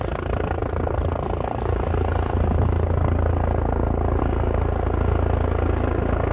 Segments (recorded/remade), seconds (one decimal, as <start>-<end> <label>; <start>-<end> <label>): 0.0-6.3 recorded